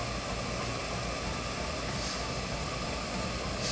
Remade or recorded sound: recorded